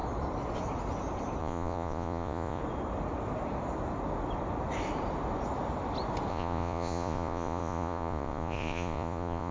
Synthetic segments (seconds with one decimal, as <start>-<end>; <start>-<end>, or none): 1.4-2.6; 6.3-9.5